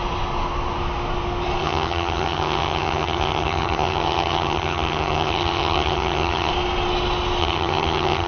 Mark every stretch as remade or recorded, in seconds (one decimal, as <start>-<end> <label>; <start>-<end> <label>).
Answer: 0.0-1.6 recorded; 1.6-6.5 remade; 6.5-7.4 recorded; 7.4-8.3 remade